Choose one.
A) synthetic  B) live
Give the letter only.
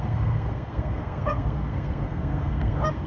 A